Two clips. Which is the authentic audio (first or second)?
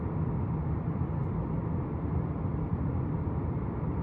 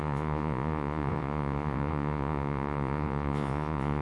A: first